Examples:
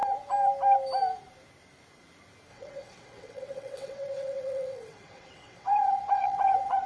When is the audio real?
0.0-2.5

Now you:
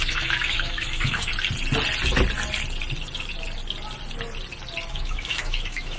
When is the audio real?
1.3-4.9

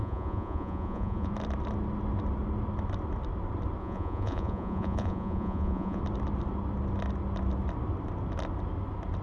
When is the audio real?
1.3-3.8; 6.0-9.2

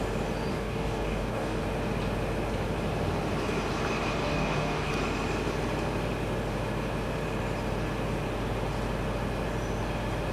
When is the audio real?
0.0-0.5; 1.6-4.2; 4.9-10.3